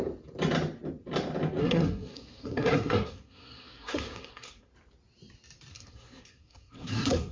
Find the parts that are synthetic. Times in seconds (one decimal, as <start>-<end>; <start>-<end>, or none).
1.6-4.7; 5.7-7.3